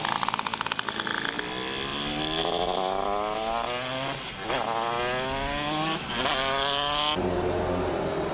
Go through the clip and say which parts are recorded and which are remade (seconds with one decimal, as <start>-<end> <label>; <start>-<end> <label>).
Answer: 0.0-8.3 recorded